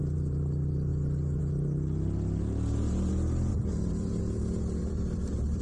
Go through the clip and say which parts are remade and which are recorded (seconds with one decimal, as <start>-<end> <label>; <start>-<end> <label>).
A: 0.0-3.5 recorded; 3.5-4.2 remade; 4.2-4.8 recorded; 4.8-5.6 remade